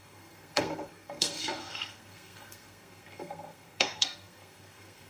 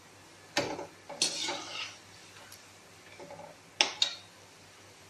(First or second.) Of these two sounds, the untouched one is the second